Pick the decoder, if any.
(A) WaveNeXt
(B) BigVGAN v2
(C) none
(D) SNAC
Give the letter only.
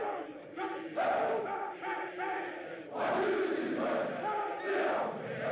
C